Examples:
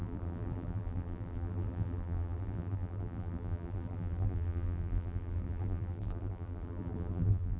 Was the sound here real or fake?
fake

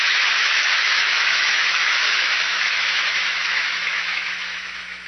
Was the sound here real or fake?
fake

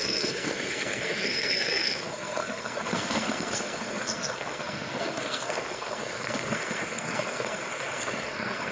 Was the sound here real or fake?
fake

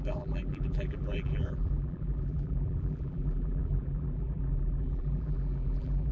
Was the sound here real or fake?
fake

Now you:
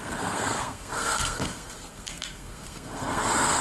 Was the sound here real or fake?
fake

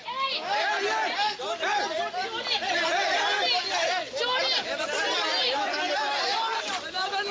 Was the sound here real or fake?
real